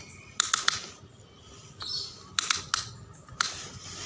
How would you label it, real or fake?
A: real